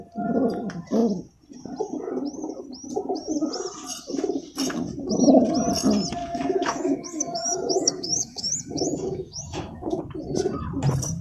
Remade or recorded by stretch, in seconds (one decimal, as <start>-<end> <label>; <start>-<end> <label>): 0.0-6.2 recorded; 6.2-10.0 remade; 10.0-11.2 recorded